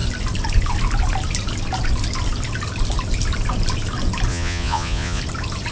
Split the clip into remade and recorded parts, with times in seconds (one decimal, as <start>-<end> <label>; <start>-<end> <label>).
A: 0.0-4.3 recorded; 4.3-5.2 remade; 5.2-5.7 recorded